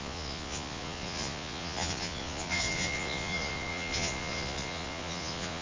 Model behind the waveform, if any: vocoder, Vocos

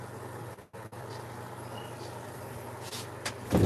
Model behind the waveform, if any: none